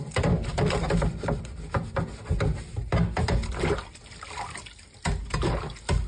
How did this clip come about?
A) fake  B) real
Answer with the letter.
B